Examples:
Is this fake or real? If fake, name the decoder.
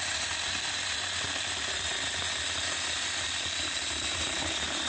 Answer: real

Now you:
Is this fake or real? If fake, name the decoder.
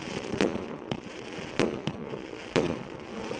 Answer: fake, vocoder, Vocos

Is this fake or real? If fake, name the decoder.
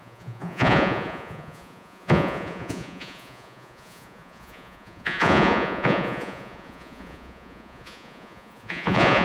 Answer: fake, vocoder, Vocos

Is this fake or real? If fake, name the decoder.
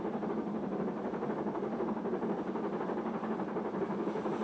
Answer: real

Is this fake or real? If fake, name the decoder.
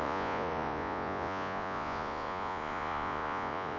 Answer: fake, vocoder, Vocos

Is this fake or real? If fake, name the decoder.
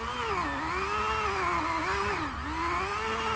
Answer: real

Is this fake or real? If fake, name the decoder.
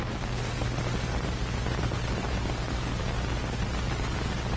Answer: real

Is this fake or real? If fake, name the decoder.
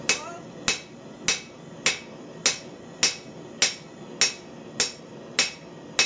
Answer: real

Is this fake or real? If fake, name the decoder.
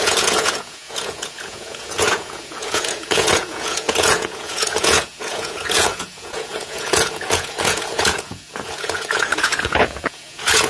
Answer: fake, vocoder, Vocos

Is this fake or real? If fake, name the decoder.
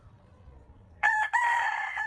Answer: fake, vocoder, Vocos